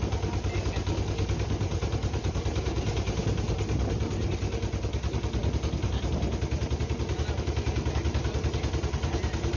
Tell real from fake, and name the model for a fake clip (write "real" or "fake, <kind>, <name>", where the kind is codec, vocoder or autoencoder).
real